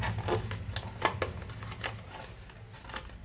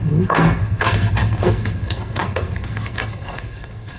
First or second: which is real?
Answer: first